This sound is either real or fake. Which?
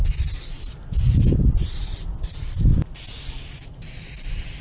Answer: real